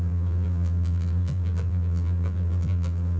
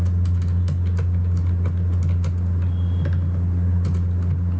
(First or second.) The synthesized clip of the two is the first